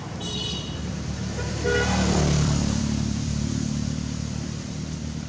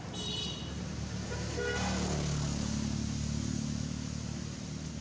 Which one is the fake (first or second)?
first